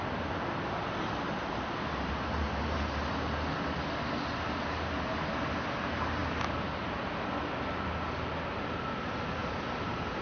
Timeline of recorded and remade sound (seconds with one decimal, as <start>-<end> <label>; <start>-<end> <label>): 0.0-10.2 recorded